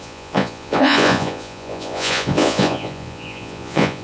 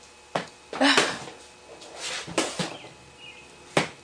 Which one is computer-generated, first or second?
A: first